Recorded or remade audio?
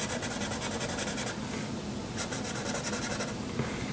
recorded